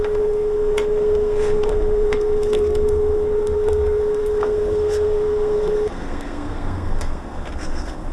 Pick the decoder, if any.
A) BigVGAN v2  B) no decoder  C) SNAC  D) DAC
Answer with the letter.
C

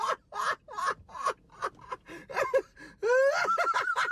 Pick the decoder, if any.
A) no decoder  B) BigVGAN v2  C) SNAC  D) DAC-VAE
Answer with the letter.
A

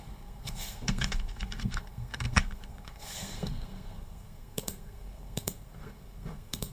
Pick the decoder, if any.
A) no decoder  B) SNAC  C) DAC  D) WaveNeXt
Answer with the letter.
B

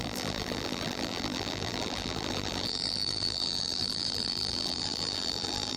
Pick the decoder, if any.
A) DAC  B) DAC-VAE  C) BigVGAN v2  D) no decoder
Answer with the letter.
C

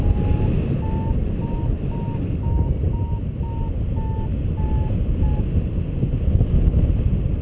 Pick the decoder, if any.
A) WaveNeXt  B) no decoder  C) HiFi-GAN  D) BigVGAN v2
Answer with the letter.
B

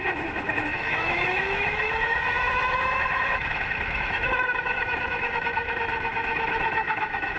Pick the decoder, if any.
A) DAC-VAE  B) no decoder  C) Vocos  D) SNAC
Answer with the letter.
A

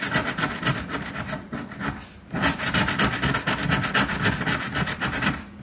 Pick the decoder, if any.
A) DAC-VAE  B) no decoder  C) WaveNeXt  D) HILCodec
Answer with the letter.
B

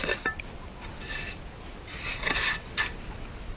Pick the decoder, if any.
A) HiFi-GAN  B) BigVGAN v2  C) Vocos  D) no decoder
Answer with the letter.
D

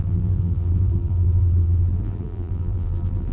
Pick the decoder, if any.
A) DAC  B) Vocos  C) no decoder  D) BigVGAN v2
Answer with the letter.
D